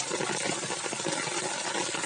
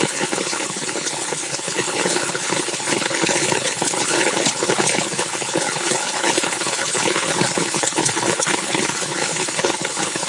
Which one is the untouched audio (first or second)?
first